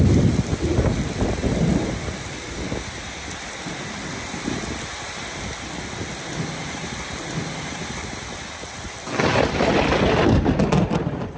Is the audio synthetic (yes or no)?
no